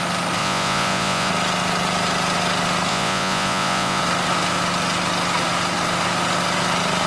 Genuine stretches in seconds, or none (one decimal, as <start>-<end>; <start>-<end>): 0.0-0.4; 1.3-2.9; 4.0-7.1